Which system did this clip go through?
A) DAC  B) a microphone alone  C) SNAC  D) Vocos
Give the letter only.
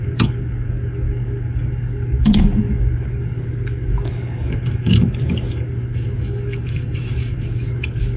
A